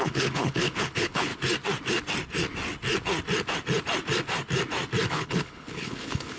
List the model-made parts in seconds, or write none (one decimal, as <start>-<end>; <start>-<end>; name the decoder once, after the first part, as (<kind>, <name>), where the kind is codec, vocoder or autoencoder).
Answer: 0.0-1.3 (codec, HILCodec); 5.1-6.4